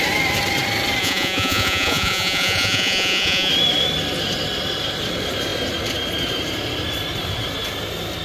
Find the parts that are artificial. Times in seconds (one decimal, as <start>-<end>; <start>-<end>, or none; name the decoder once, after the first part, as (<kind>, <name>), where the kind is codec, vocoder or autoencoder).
1.0-3.5 (vocoder, Vocos)